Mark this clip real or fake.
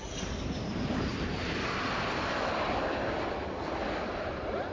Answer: real